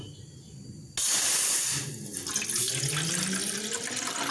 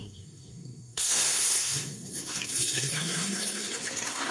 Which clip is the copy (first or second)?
second